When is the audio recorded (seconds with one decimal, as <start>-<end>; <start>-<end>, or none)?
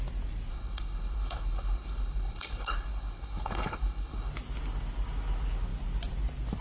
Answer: 0.0-0.5; 4.3-6.6